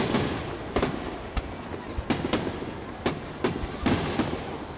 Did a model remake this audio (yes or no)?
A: no